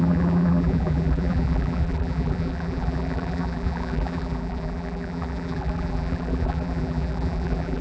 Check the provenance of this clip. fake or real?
fake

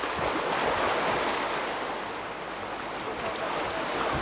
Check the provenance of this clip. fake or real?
real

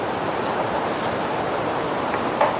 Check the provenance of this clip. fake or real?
fake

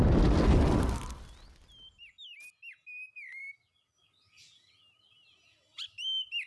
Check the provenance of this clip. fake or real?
real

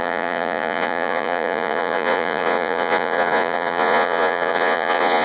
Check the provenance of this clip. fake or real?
fake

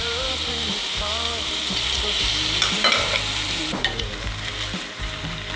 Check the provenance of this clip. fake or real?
fake